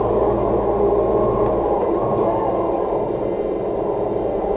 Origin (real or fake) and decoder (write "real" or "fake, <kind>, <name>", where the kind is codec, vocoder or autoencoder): real